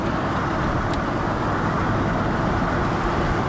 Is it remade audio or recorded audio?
recorded